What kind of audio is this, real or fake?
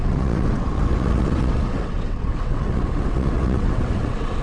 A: fake